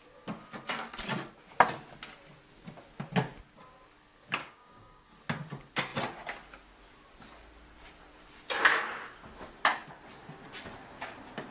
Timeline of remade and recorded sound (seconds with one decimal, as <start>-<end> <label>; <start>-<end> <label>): 0.0-4.4 recorded; 4.4-5.1 remade; 5.1-11.5 recorded